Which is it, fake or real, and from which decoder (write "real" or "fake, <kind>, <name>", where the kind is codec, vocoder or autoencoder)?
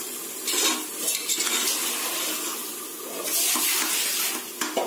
real